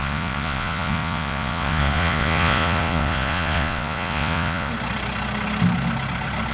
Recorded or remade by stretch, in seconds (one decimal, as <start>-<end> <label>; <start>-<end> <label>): 0.0-4.7 remade; 4.7-6.5 recorded